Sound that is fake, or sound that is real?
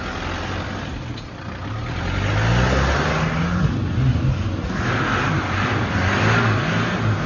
real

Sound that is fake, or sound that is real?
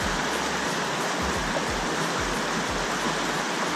real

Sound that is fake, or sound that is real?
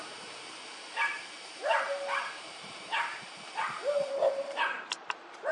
fake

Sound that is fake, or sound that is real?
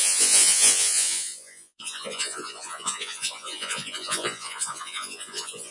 fake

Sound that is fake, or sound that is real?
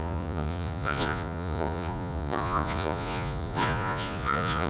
fake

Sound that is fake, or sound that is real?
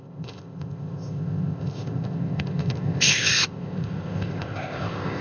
fake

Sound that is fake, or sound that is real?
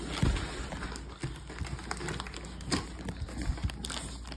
real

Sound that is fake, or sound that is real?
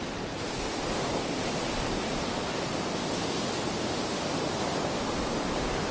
real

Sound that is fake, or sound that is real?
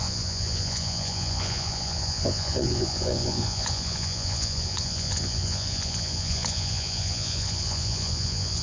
fake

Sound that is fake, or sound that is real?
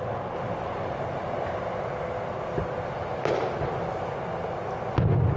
real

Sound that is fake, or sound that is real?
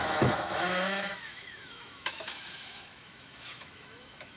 fake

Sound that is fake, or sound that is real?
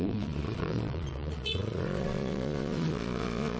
fake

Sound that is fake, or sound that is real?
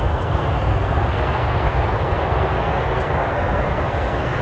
fake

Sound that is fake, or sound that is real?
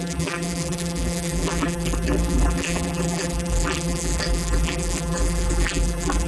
fake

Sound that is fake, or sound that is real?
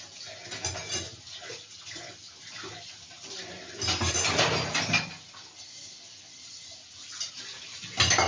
real